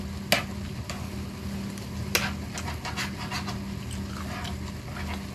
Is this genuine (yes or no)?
yes